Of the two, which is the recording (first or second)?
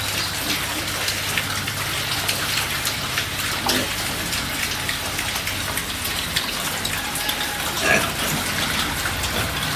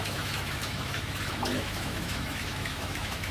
first